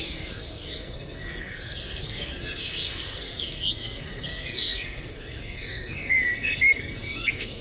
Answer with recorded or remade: remade